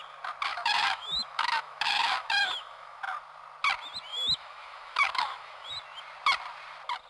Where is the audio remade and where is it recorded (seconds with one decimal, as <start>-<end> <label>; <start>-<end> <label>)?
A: 0.0-0.5 recorded; 0.5-3.0 remade; 3.0-4.1 recorded; 4.1-5.7 remade; 5.7-7.1 recorded